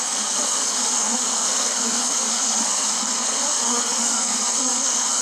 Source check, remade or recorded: remade